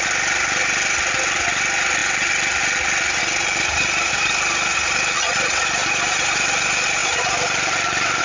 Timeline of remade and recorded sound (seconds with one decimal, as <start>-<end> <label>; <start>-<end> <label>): 0.0-8.2 recorded